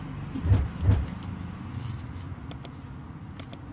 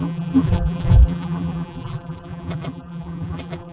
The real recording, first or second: first